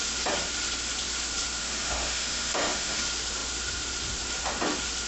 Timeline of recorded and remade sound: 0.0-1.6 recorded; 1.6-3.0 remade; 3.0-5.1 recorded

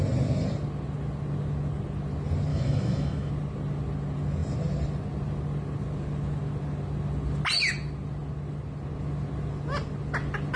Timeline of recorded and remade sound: 0.0-2.5 recorded; 2.5-3.3 remade; 3.3-10.6 recorded

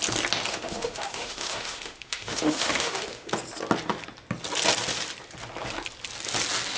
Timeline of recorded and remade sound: 0.0-0.5 recorded; 0.5-3.3 remade; 3.3-6.8 recorded

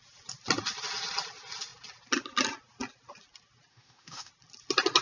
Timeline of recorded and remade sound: 0.0-3.7 recorded; 3.7-4.3 remade; 4.3-5.0 recorded

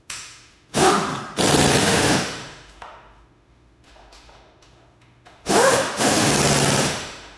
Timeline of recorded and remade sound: 0.0-1.1 remade; 1.1-1.8 recorded; 1.8-6.3 remade; 6.3-6.8 recorded; 6.8-7.4 remade

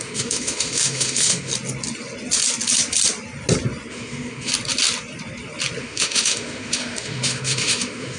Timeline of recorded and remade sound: 0.0-1.5 remade; 1.5-3.9 recorded; 3.9-4.5 remade; 4.5-5.8 recorded; 5.8-8.2 remade

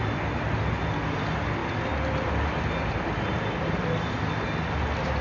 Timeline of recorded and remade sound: 0.0-5.2 recorded

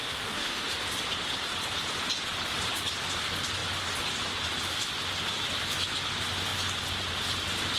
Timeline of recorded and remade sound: 0.0-0.8 remade; 0.8-7.8 recorded